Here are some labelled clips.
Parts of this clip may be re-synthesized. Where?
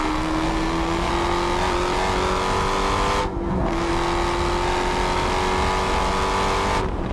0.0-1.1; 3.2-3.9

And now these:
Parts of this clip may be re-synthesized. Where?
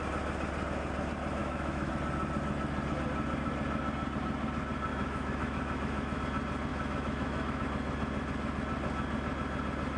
1.4-1.9; 4.9-6.2; 6.7-7.6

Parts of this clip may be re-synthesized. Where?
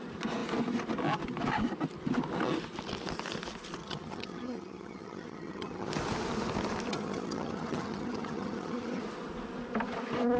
3.8-5.9; 6.9-9.0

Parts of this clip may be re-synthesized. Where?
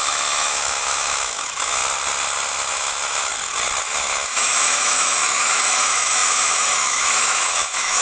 0.0-1.8; 2.7-3.3; 3.8-8.0